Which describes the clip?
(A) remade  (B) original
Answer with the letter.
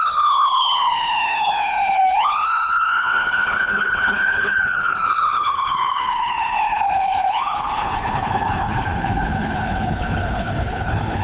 A